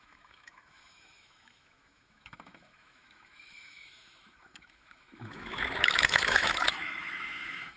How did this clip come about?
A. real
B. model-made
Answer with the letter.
B